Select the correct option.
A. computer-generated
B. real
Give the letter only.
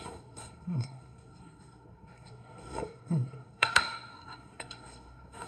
A